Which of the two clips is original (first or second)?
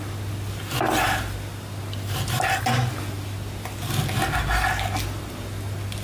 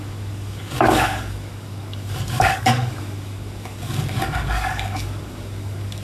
first